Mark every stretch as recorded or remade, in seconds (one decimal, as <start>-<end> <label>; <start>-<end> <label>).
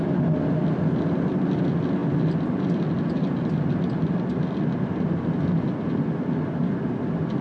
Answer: 0.0-7.4 recorded